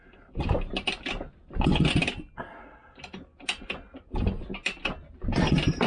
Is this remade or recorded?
recorded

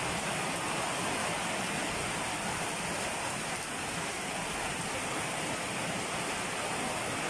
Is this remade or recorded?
recorded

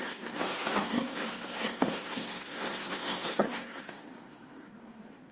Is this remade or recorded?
remade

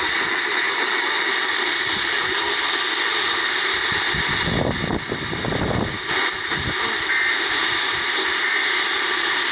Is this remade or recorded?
recorded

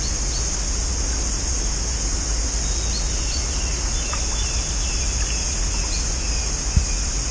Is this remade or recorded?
recorded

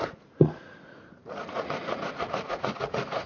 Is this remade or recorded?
remade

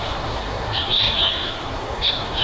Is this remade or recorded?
remade